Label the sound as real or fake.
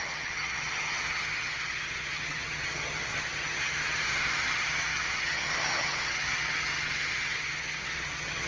fake